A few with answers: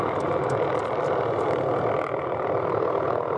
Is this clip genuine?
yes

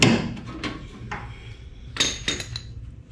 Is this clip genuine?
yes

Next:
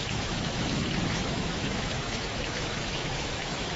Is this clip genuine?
no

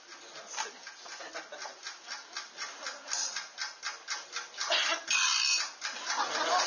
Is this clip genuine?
yes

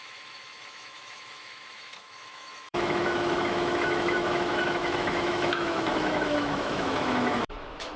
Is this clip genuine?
no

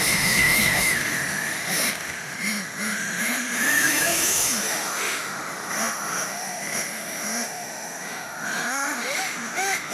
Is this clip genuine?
no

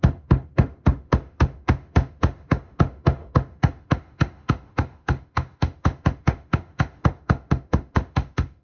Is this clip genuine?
no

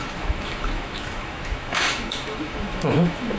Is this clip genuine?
no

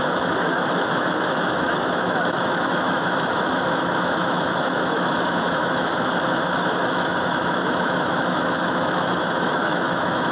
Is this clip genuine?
no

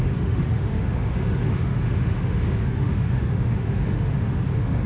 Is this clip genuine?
no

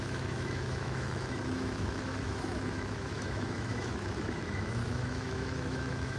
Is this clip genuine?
no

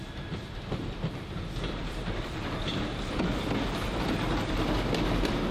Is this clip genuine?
yes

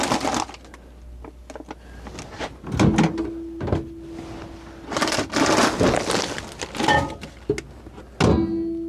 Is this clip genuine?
yes